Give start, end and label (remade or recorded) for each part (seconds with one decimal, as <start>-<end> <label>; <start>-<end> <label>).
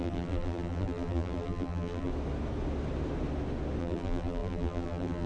0.0-2.1 remade; 2.1-3.8 recorded; 3.8-5.3 remade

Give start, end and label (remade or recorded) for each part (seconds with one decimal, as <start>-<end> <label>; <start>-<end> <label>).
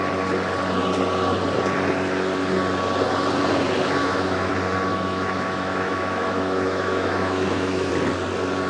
0.0-4.0 recorded; 4.0-4.5 remade; 4.5-4.9 recorded; 4.9-7.9 remade; 7.9-8.7 recorded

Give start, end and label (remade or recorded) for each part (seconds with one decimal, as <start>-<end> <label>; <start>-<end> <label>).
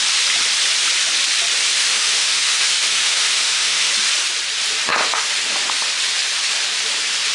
0.0-1.8 recorded; 1.8-3.9 remade; 3.9-7.3 recorded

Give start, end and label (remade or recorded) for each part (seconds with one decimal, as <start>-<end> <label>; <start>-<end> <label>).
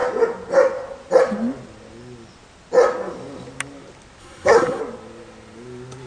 0.0-4.2 recorded; 4.2-4.8 remade; 4.8-6.1 recorded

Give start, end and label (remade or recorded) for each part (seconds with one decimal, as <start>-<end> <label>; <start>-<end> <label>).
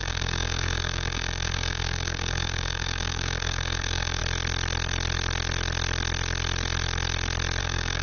0.0-4.2 remade; 4.2-7.6 recorded; 7.6-8.0 remade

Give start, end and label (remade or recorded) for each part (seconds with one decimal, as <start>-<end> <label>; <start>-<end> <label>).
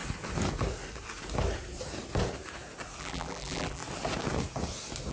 0.0-3.0 recorded; 3.0-3.8 remade; 3.8-5.1 recorded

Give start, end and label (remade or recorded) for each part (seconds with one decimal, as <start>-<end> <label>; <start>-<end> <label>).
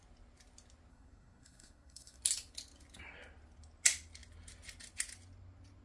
0.0-0.9 recorded; 0.9-2.2 remade; 2.2-5.8 recorded